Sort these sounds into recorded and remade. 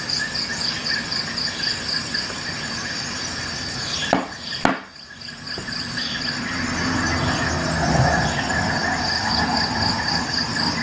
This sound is recorded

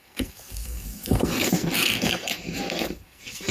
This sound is remade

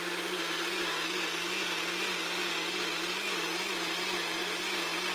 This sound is recorded